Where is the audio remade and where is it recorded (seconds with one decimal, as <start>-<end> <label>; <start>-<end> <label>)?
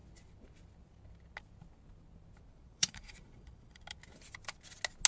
0.0-2.5 recorded; 2.5-3.8 remade; 3.8-5.1 recorded